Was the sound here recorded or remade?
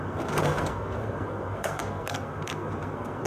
remade